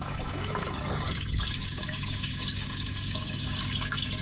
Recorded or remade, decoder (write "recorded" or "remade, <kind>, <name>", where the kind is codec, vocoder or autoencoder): remade, codec, DAC